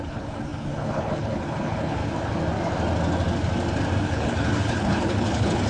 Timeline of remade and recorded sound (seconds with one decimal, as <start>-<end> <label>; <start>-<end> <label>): 0.0-2.0 remade; 2.0-4.0 recorded; 4.0-5.7 remade